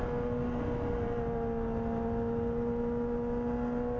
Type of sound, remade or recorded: recorded